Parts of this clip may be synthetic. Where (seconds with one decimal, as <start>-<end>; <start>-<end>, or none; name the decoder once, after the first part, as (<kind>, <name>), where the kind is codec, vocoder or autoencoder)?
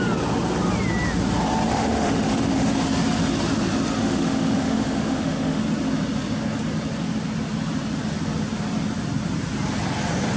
1.7-2.7 (autoencoder, DAC-VAE); 4.0-5.6